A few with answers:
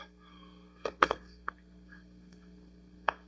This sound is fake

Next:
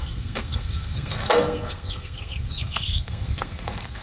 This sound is fake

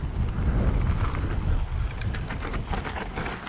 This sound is real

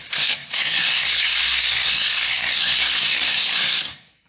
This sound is fake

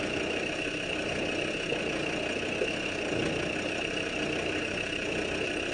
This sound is real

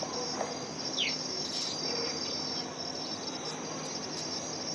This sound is real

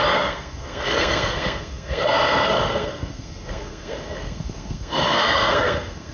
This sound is fake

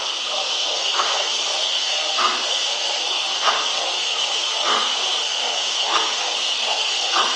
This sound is fake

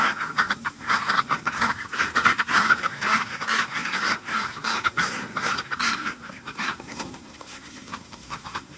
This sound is fake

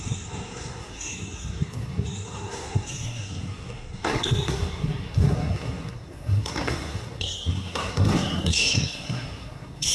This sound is fake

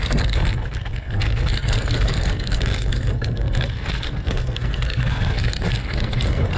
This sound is fake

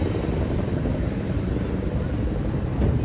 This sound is real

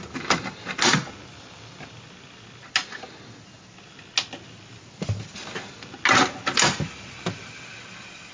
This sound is real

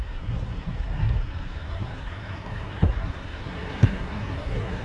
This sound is fake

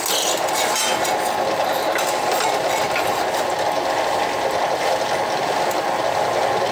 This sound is real